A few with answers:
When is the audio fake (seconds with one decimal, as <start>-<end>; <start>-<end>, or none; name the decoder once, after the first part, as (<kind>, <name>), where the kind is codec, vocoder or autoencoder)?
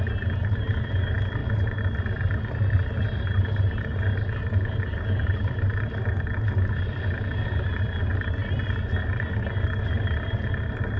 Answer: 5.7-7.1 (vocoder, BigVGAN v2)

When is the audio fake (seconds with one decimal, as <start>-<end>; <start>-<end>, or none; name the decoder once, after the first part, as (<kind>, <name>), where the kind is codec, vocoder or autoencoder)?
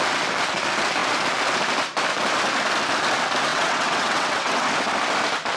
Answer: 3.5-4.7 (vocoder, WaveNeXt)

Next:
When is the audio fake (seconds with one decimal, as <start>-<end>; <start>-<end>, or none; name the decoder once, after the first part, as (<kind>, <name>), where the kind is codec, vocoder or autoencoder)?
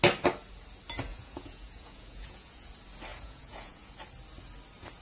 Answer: 1.1-2.7 (vocoder, Vocos); 3.1-3.9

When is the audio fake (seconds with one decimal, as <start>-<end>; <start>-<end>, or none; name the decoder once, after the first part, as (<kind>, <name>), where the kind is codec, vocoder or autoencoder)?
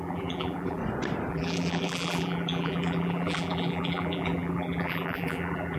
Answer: 0.0-0.8 (vocoder, BigVGAN v2); 1.3-5.8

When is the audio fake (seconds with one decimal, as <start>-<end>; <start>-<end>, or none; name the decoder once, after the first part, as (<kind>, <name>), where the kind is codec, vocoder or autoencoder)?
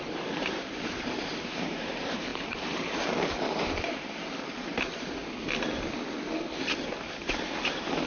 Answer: 0.0-5.2 (vocoder, BigVGAN v2); 7.0-8.1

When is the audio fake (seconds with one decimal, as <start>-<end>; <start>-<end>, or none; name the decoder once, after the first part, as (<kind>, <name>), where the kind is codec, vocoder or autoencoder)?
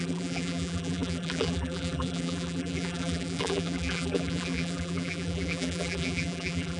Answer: 0.0-6.8 (vocoder, BigVGAN v2)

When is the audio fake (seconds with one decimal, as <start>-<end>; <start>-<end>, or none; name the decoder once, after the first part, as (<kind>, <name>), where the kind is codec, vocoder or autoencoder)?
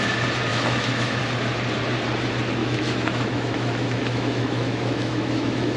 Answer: 0.5-1.2 (autoencoder, DAC-VAE); 2.6-5.8